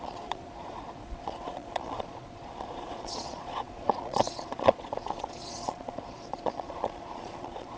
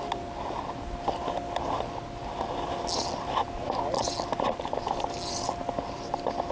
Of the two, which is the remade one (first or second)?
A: first